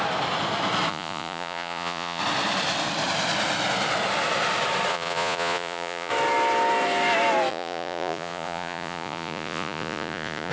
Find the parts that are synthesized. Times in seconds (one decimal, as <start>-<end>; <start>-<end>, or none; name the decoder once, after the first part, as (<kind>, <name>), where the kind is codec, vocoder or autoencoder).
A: 0.9-2.2 (vocoder, Vocos); 4.9-6.1; 7.5-10.5